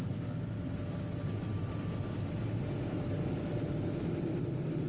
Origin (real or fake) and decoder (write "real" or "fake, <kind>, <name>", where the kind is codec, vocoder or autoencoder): real